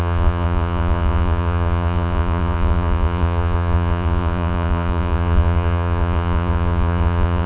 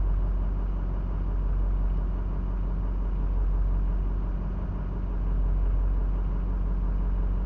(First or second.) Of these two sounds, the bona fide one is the second